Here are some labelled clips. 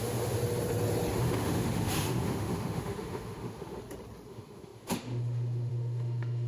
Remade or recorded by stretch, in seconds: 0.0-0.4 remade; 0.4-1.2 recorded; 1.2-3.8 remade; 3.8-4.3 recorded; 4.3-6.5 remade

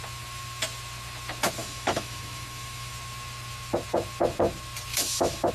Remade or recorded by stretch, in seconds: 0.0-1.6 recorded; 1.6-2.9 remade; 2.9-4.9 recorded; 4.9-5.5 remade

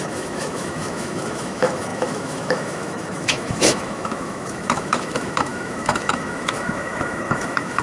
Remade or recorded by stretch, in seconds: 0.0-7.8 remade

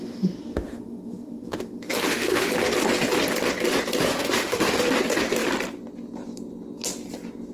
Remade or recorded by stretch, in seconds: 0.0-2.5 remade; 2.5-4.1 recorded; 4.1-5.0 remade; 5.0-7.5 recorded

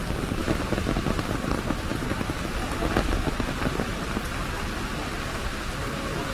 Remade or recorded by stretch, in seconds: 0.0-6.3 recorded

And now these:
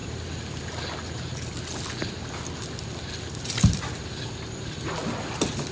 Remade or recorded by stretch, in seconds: 0.0-5.7 recorded